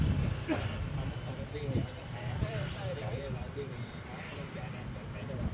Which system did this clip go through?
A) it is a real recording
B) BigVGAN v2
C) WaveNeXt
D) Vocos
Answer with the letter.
B